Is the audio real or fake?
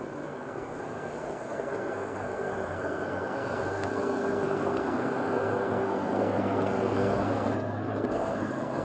fake